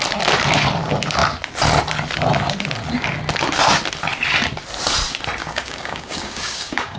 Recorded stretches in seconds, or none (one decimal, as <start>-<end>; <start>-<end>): 0.0-5.4